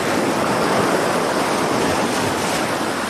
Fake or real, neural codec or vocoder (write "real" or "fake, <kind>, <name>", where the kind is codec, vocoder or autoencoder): fake, vocoder, BigVGAN v2